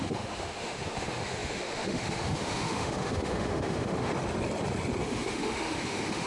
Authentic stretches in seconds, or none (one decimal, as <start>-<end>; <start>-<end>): 4.1-5.0